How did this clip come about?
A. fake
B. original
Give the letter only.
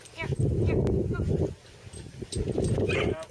B